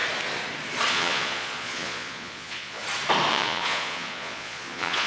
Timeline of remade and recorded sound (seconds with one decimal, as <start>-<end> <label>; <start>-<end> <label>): 0.0-0.9 recorded; 0.9-2.8 remade; 2.8-3.3 recorded; 3.3-5.1 remade